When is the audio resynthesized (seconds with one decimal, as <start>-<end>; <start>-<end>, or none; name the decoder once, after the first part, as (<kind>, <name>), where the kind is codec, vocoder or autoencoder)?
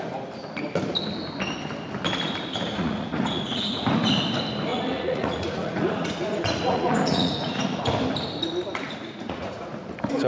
2.7-4.0 (vocoder, Vocos); 4.7-7.8; 9.0-9.7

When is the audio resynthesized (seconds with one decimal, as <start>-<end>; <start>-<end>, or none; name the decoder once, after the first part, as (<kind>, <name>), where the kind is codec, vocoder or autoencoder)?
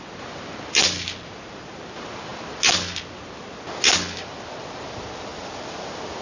none